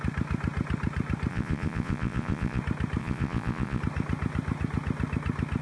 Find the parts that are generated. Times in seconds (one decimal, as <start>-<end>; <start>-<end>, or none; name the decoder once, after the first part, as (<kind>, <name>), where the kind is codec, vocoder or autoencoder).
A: 1.3-2.6 (vocoder, Vocos); 3.0-3.8